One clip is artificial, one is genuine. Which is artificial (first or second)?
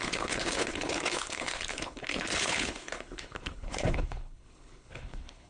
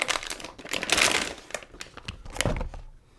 first